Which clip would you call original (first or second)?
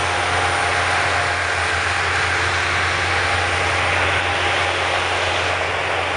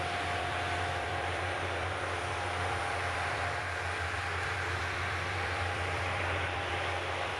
first